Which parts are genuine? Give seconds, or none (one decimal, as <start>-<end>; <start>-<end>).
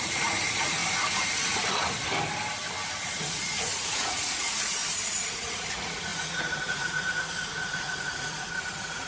0.8-3.0; 4.8-5.3